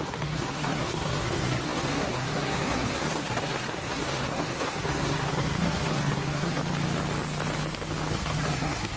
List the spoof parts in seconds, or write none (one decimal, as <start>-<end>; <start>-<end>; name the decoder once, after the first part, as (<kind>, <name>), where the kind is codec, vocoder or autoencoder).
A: 0.0-6.6 (codec, SNAC); 8.1-9.0